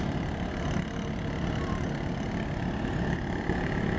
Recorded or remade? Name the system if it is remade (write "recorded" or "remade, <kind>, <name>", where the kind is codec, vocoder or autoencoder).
recorded